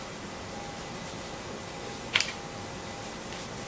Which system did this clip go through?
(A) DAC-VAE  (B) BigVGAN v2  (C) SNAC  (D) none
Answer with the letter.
D